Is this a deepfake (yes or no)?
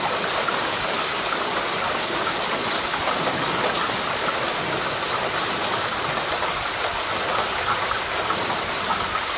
no